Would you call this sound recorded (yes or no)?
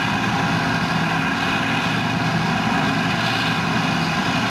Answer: yes